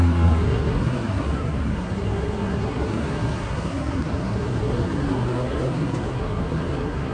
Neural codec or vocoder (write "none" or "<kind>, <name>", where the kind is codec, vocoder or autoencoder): codec, SNAC